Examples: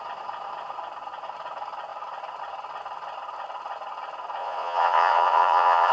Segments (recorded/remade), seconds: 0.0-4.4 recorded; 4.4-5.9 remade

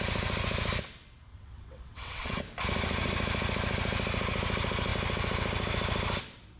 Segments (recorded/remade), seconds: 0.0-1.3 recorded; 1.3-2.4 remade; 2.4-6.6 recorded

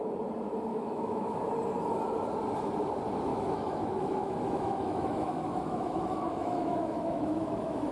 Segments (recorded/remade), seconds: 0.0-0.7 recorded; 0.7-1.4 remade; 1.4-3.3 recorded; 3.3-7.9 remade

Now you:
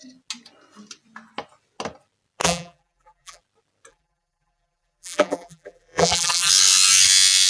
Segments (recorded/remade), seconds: 0.0-2.4 recorded; 2.4-3.4 remade; 3.4-3.9 recorded; 3.9-6.5 remade; 6.5-7.5 recorded

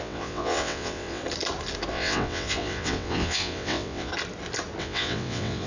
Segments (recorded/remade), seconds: 0.0-1.2 remade; 1.2-1.9 recorded; 1.9-4.1 remade; 4.1-4.8 recorded; 4.8-5.7 remade

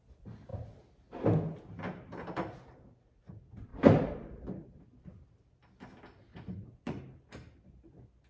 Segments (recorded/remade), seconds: 0.0-6.3 recorded; 6.3-7.0 remade; 7.0-8.3 recorded

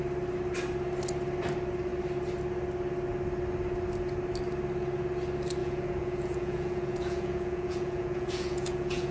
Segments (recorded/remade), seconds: 0.0-5.6 recorded; 5.6-9.1 remade

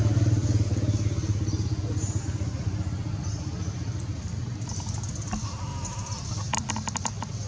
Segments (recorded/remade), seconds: 0.0-5.7 recorded; 5.7-6.7 remade; 6.7-7.5 recorded